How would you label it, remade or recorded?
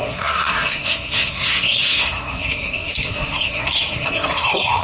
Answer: remade